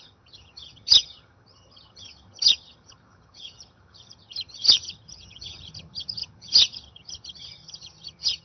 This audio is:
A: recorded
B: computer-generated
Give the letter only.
B